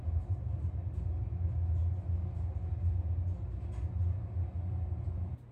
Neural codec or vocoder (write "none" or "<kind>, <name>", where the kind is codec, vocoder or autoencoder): none